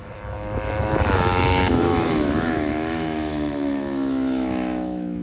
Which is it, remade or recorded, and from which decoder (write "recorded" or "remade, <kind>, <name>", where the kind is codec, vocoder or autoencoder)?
remade, autoencoder, DAC-VAE